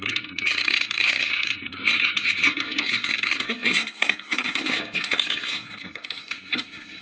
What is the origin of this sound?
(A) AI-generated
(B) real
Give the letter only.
A